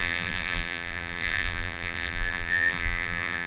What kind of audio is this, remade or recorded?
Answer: remade